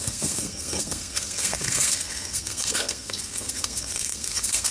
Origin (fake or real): fake